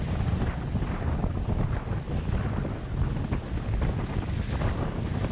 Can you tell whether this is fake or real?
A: real